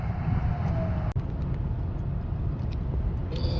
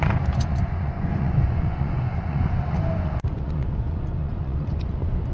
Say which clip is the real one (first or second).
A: first